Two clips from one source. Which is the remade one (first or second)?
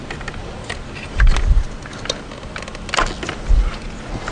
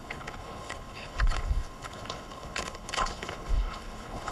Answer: second